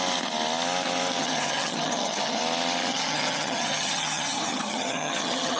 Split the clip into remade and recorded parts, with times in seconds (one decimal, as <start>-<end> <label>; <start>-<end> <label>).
0.0-1.2 recorded; 1.2-2.4 remade; 2.4-2.9 recorded; 2.9-5.6 remade